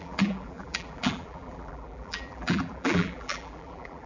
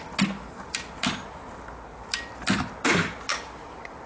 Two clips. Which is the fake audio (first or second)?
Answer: first